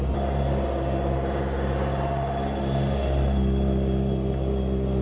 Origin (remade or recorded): recorded